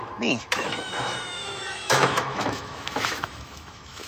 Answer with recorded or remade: remade